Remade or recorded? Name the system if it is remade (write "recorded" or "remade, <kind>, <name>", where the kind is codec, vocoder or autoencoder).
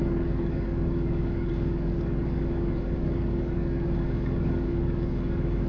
remade, codec, DAC